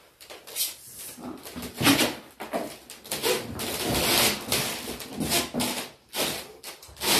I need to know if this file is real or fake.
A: real